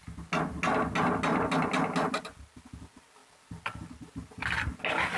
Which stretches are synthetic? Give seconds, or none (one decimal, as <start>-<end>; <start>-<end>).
3.2-4.8